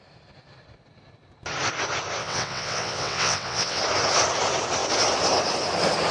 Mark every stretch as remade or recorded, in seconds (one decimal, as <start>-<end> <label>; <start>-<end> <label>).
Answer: 0.0-2.2 recorded; 2.2-3.8 remade; 3.8-6.1 recorded